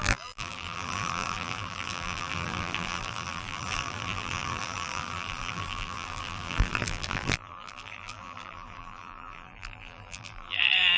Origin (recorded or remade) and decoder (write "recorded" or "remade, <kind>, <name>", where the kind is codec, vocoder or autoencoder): remade, vocoder, BigVGAN v2